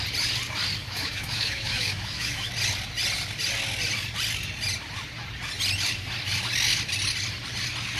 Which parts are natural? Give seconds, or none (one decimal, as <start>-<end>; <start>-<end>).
0.0-0.8; 2.5-8.0

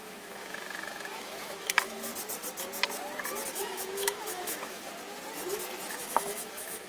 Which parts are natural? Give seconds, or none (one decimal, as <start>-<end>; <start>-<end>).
2.1-3.5; 4.9-5.9

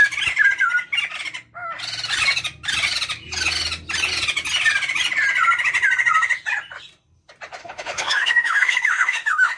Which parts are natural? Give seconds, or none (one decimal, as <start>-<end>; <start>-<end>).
0.0-7.6

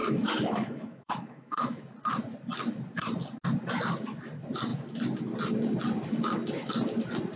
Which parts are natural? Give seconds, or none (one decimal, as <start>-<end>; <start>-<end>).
1.8-7.4

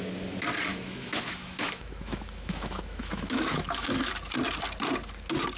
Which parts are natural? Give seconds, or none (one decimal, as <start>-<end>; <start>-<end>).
0.0-0.7; 4.1-5.6